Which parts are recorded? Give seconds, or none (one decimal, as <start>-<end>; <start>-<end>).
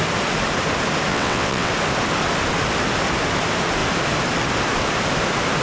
0.0-1.1; 1.7-5.6